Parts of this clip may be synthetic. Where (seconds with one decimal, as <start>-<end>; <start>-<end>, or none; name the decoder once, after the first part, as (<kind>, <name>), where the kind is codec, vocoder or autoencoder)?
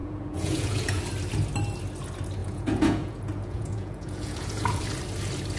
0.0-1.0 (vocoder, Vocos); 2.4-4.8